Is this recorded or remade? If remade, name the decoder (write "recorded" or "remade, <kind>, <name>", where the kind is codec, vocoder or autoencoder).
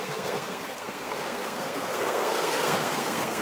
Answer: remade, codec, SNAC